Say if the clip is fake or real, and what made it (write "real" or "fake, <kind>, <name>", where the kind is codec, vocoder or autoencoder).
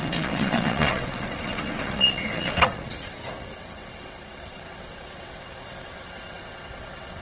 fake, vocoder, WaveNeXt